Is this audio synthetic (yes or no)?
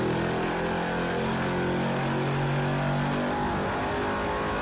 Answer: no